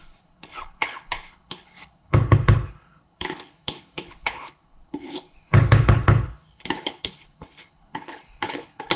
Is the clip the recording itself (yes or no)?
no